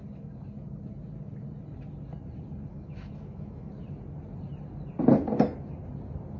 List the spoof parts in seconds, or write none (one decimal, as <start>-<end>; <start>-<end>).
2.7-3.7